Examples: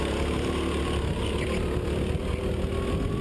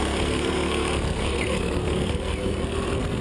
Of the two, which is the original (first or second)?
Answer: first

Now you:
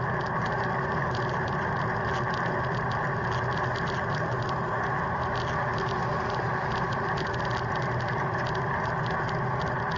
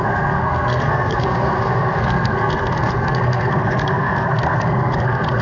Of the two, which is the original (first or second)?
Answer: first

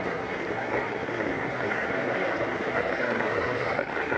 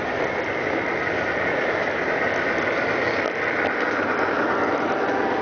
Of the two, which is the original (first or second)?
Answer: second